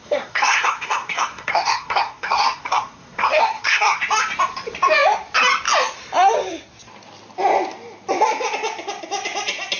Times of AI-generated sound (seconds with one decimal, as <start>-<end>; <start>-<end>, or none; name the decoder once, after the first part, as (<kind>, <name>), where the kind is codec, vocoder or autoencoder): 0.0-4.0 (codec, SNAC)